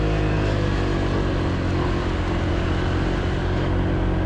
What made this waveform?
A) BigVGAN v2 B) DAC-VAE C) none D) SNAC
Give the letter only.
C